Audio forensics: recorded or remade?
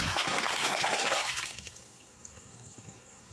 remade